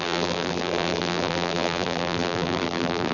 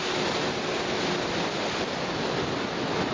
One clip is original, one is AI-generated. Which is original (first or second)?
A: second